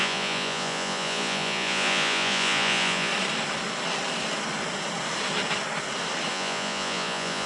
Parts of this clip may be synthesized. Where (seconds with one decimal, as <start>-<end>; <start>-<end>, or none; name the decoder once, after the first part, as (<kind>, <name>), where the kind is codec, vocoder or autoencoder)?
0.0-3.1 (vocoder, Vocos); 6.3-7.5